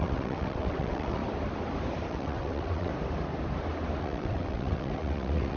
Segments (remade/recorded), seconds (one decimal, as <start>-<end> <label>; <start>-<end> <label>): 0.0-1.2 remade; 1.2-2.1 recorded; 2.1-2.9 remade; 2.9-4.0 recorded; 4.0-5.6 remade